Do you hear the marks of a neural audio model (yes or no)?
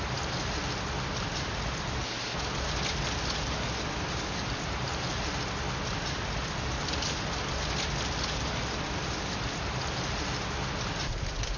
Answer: no